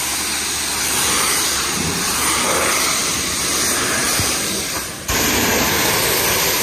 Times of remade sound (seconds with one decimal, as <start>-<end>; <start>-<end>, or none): 0.7-2.6; 4.0-4.8